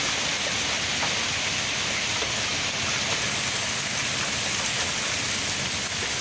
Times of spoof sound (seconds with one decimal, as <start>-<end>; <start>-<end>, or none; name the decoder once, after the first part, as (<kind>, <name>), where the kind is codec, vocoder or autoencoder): none